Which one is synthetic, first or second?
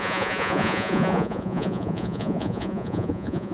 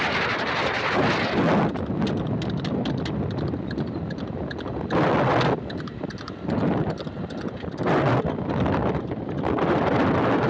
first